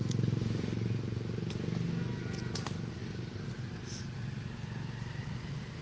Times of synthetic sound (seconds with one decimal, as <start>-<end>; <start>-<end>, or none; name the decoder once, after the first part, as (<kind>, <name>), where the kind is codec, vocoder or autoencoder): none